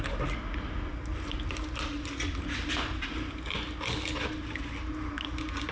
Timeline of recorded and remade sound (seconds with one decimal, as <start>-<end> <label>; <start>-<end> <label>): 0.0-5.7 recorded